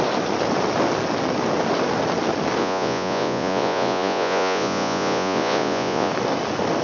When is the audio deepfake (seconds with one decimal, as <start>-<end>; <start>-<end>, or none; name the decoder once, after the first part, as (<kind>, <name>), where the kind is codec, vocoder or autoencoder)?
2.6-6.1 (vocoder, Vocos)